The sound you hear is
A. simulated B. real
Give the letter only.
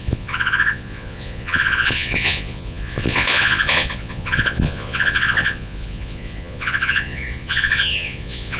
A